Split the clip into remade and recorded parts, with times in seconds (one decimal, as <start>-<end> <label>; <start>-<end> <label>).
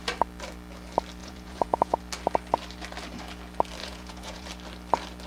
0.0-1.2 recorded; 1.2-2.0 remade; 2.0-3.8 recorded; 3.8-4.5 remade; 4.5-5.3 recorded